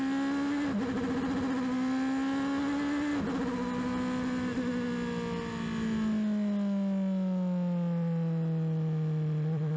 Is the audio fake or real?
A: real